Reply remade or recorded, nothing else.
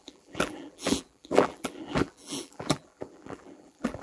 remade